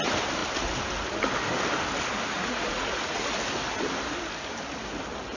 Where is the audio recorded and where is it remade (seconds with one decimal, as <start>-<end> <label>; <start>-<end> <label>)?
0.0-2.3 recorded; 2.3-3.2 remade; 3.2-5.4 recorded